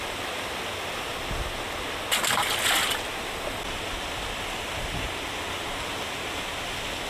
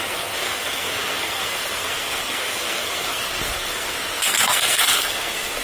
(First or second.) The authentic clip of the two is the first